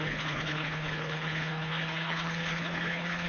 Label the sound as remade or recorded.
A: remade